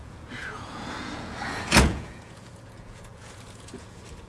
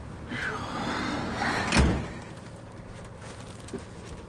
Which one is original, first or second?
second